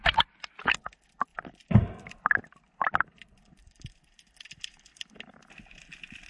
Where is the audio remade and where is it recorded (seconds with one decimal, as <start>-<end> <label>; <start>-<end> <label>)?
0.0-1.3 recorded; 1.3-5.1 remade; 5.1-6.3 recorded